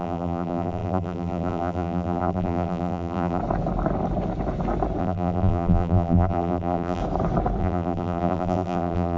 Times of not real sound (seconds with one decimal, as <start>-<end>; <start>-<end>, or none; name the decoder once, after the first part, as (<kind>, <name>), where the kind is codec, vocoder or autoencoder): 0.0-3.4 (vocoder, BigVGAN v2); 5.0-7.0; 7.6-9.2

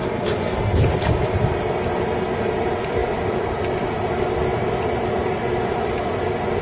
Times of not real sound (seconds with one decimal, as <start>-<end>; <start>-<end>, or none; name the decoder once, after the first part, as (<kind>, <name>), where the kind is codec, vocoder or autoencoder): none

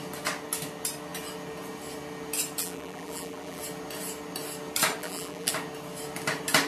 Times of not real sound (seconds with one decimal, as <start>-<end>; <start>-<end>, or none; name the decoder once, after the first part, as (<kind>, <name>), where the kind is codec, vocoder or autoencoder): 2.6-3.6 (vocoder, BigVGAN v2); 5.0-5.5

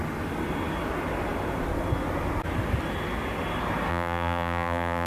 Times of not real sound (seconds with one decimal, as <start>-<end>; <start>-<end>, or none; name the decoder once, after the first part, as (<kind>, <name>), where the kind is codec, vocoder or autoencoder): 3.9-5.1 (vocoder, BigVGAN v2)